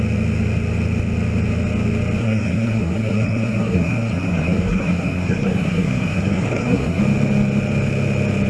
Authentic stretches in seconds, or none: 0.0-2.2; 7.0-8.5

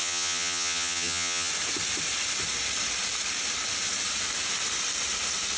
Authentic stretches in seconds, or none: 1.5-5.6

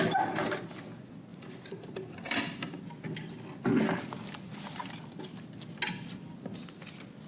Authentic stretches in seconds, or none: 0.0-1.3; 2.8-7.3

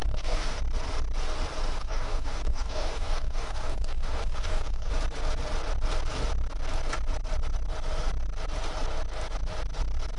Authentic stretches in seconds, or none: 0.6-1.8; 4.9-10.2